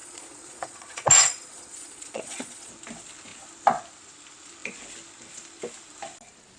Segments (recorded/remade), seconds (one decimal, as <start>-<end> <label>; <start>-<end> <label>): 0.0-2.7 remade; 2.7-6.6 recorded